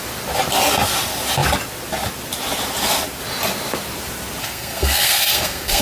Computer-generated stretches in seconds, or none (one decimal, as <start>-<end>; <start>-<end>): 4.4-5.8